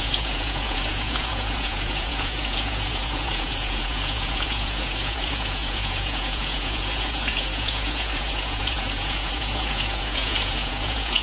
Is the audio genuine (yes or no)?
no